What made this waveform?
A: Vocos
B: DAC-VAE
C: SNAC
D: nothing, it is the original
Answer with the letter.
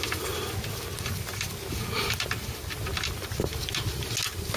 D